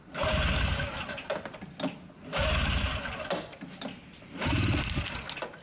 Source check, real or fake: real